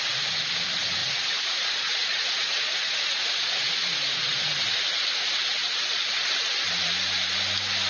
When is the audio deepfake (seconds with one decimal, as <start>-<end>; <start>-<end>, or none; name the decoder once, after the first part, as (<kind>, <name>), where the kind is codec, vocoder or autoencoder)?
1.0-4.5 (vocoder, Vocos)